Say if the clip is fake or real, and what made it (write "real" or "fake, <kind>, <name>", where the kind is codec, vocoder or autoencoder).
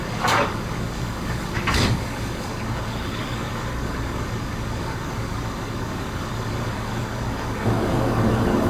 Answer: fake, codec, DAC